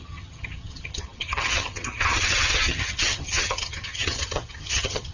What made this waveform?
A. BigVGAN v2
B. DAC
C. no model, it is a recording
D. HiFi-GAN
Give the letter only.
D